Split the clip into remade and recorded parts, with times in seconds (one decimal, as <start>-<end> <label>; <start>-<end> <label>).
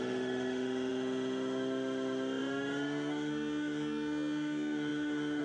0.0-5.4 remade